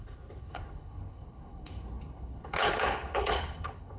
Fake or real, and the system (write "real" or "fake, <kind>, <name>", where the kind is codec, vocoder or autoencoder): fake, codec, HILCodec